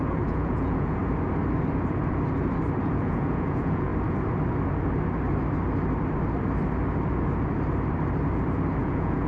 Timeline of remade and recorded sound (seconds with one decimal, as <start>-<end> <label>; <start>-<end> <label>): 0.0-1.0 remade; 1.0-2.8 recorded; 2.8-3.9 remade; 3.9-8.8 recorded; 8.8-9.3 remade